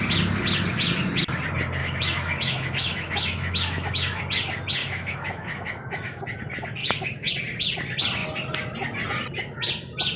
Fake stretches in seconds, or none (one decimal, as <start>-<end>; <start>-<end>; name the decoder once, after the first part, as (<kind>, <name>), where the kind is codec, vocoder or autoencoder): 1.8-4.2 (autoencoder, DAC-VAE); 4.8-6.2; 6.8-7.3